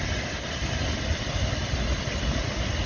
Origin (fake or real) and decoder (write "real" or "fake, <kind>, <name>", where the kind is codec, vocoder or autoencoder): real